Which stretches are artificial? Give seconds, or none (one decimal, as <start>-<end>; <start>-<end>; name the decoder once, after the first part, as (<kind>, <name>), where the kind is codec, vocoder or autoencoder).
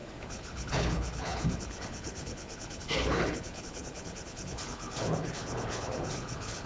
0.0-6.7 (codec, HILCodec)